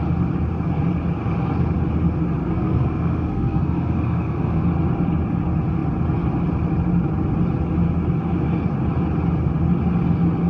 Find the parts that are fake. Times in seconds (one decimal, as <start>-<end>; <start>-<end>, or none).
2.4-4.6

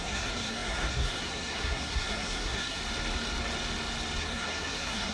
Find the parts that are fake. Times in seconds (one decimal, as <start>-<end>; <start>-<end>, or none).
0.0-2.8; 4.2-5.1

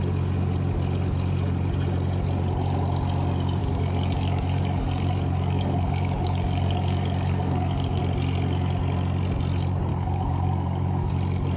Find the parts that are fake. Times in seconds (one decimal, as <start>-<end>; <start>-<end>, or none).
3.6-8.0; 9.9-11.1

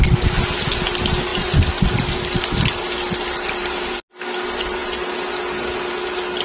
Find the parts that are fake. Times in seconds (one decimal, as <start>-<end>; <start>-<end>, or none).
none

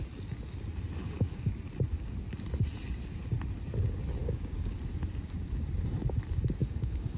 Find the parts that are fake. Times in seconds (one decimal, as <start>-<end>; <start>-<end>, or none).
1.0-1.5; 4.2-4.8; 6.6-7.2

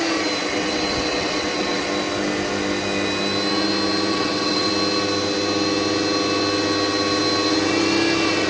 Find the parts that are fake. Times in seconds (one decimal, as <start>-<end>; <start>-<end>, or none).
0.4-1.9; 4.1-4.7

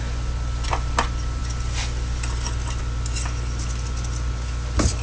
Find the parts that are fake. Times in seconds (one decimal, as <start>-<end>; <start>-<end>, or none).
none

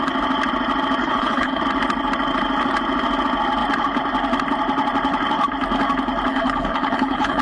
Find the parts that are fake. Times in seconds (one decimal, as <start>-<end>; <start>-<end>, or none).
1.0-1.6; 6.3-7.4